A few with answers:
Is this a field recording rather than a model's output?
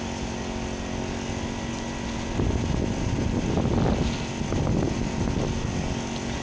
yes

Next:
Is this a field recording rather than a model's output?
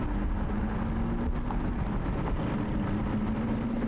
yes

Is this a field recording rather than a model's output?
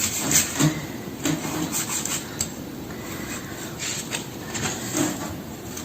yes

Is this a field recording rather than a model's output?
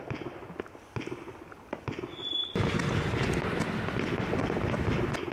yes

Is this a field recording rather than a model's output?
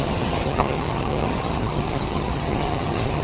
no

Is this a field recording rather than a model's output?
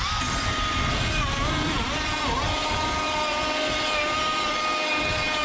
yes